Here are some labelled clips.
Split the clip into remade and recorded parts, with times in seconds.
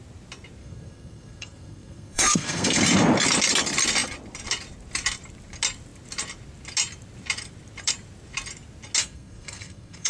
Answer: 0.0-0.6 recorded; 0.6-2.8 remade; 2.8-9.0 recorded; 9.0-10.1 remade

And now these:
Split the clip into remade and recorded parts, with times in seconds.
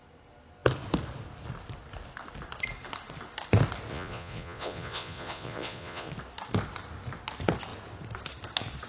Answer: 0.0-3.9 recorded; 3.9-6.1 remade; 6.1-8.9 recorded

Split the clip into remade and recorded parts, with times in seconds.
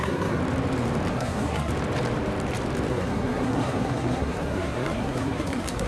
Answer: 0.0-0.4 remade; 0.4-1.1 recorded; 1.1-1.7 remade; 1.7-2.9 recorded; 2.9-5.9 remade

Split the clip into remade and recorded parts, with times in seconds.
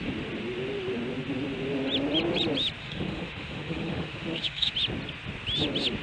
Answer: 0.0-2.8 recorded; 2.8-4.7 remade; 4.7-6.0 recorded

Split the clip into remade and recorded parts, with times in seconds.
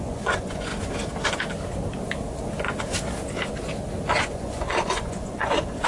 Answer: 0.0-0.7 remade; 0.7-4.2 recorded; 4.2-5.9 remade